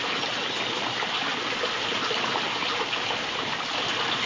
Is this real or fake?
real